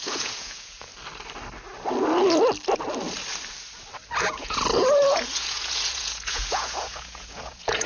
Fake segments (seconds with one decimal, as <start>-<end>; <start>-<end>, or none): 0.0-0.9; 4.2-7.9